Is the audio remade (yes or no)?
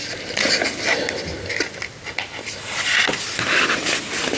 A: no